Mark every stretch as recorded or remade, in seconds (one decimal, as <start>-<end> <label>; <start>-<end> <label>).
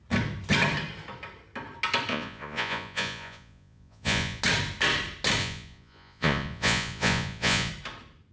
0.0-2.1 recorded; 2.1-4.4 remade; 4.4-5.4 recorded; 5.4-7.7 remade; 7.7-8.3 recorded